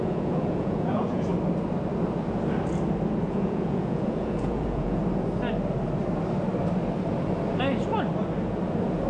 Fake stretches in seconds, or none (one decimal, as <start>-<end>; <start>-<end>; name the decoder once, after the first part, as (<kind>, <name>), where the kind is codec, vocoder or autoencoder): 0.0-1.3 (vocoder, Vocos); 3.3-5.0